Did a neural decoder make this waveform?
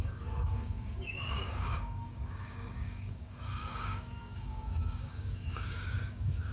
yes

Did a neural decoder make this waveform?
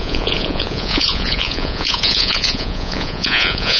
yes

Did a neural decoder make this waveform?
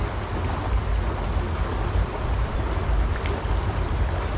no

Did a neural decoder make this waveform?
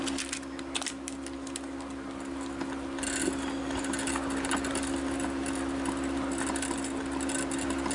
no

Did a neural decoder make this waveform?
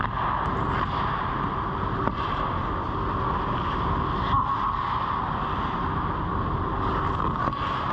no